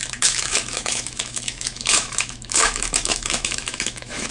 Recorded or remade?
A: remade